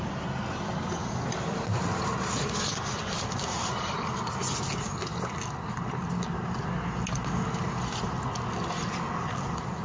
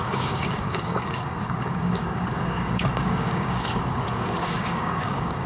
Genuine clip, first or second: first